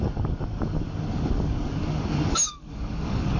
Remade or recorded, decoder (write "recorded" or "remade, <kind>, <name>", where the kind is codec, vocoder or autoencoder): remade, codec, DAC